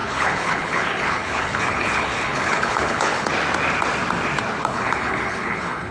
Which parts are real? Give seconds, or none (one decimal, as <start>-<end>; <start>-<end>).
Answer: 3.3-4.6